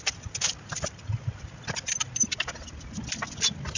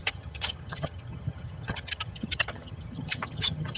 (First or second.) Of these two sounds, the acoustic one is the first